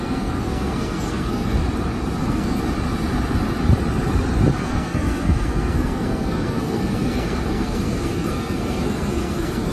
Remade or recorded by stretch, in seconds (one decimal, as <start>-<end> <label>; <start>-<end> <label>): 0.0-1.6 remade; 1.6-2.2 recorded; 2.2-2.6 remade; 2.6-4.6 recorded; 4.6-9.7 remade